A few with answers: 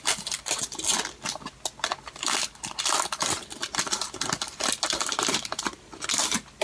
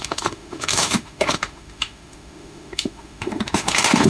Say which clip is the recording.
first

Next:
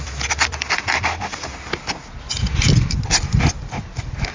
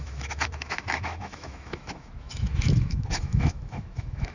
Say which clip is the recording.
first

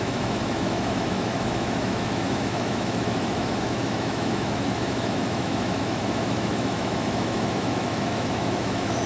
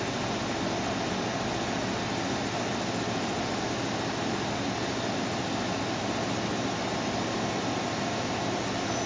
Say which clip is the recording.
second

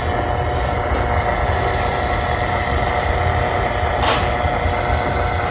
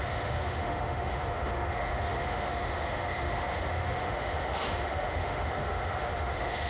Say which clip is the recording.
first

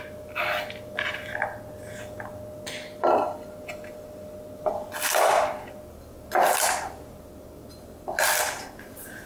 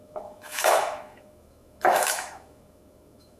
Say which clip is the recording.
first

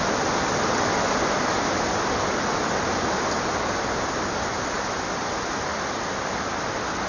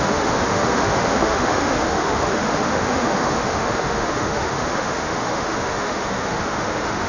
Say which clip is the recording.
first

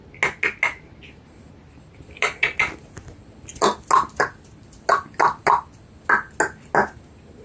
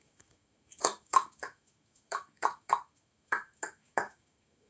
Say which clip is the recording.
first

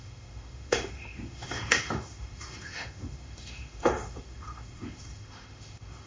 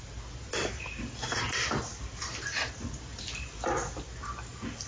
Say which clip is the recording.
second